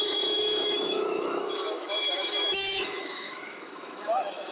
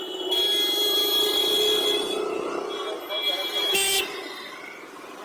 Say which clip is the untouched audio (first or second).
second